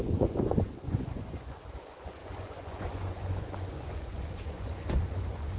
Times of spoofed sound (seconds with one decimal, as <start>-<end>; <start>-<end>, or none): 0.0-5.6